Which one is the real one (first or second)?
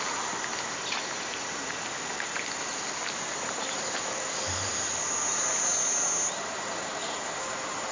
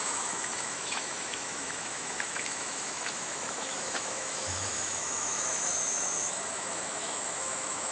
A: first